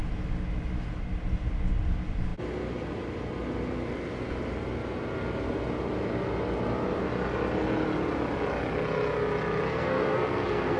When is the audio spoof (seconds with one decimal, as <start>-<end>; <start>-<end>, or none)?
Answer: 9.7-10.8